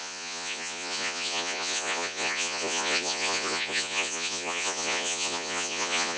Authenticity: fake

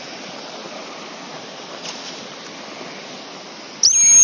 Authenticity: real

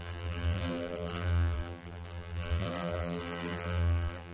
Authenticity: fake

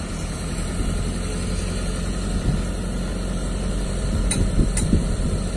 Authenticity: real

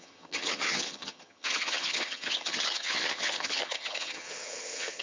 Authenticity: fake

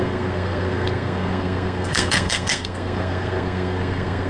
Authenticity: fake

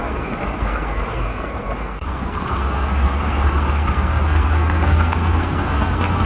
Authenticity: fake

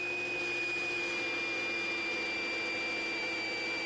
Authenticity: real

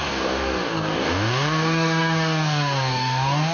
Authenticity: fake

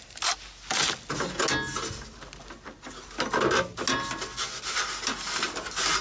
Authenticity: real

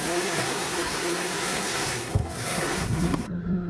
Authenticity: fake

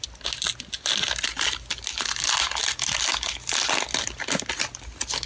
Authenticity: real